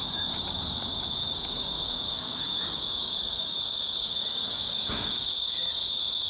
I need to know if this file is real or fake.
fake